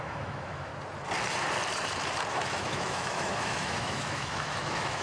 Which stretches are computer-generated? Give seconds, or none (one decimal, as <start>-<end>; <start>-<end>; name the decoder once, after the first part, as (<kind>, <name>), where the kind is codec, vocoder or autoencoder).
0.0-0.7 (autoencoder, DAC-VAE); 2.3-5.0